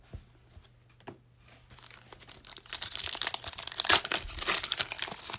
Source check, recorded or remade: recorded